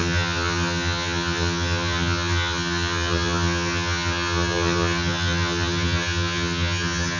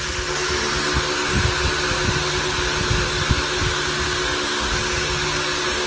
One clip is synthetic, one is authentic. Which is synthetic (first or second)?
first